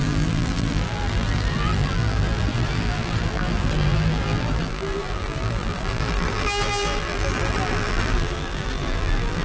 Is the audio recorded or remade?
remade